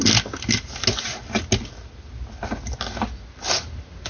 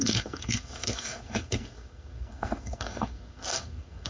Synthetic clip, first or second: second